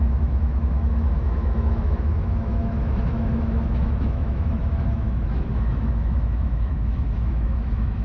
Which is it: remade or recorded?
remade